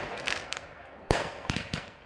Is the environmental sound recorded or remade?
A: remade